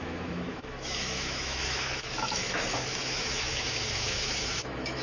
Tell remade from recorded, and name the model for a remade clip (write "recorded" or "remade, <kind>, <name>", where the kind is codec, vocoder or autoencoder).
remade, autoencoder, DAC-VAE